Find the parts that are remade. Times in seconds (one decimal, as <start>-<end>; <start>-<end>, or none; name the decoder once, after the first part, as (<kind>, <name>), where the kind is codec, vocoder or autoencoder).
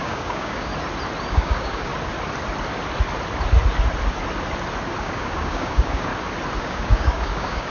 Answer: 0.0-0.7 (codec, DAC); 1.3-1.9; 5.0-6.1; 6.6-7.7